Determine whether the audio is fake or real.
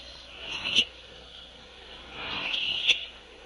fake